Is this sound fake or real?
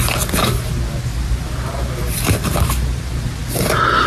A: real